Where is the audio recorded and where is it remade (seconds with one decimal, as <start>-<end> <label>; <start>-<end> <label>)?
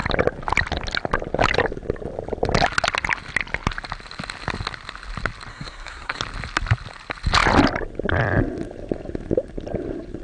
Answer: 0.0-5.5 recorded; 5.5-6.2 remade; 6.2-10.2 recorded